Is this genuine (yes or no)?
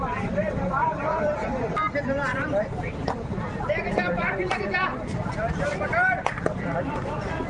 no